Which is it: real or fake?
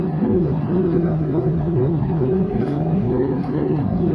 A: fake